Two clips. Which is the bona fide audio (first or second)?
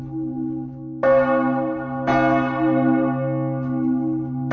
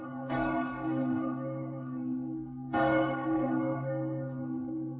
first